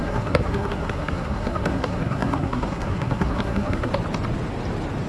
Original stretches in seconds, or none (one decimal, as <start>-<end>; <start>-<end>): 3.9-5.1